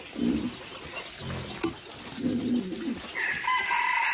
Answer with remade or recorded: recorded